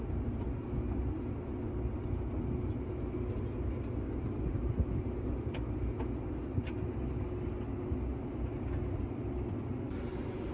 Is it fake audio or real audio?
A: real